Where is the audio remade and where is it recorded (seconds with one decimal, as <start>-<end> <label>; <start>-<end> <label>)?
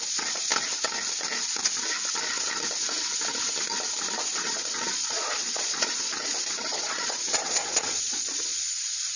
0.0-0.5 remade; 0.5-4.2 recorded; 4.2-9.2 remade